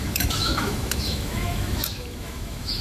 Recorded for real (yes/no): no